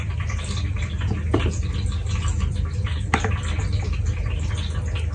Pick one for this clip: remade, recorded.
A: recorded